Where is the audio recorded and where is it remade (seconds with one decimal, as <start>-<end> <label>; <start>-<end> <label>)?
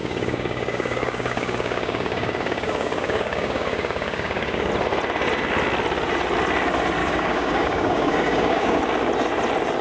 0.0-4.7 remade; 4.7-7.0 recorded; 7.0-8.8 remade; 8.8-9.8 recorded